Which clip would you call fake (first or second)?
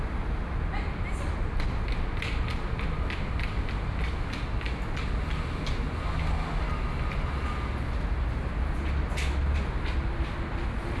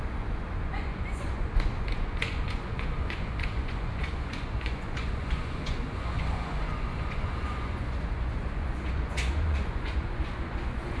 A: second